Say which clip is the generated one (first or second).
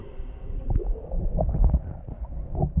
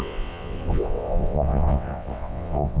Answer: second